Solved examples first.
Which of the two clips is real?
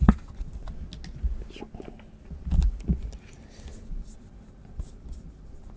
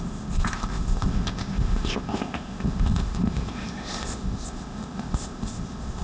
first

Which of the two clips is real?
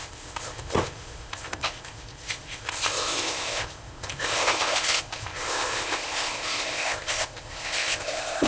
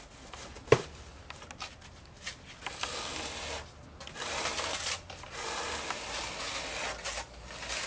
second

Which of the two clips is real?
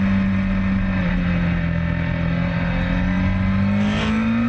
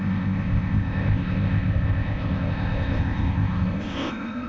first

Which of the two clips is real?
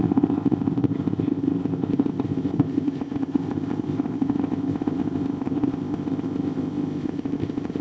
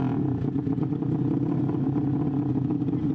second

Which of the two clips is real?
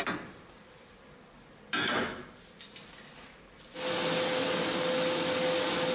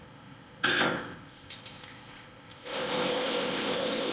first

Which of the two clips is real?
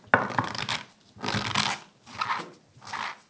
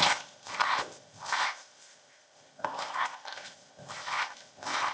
first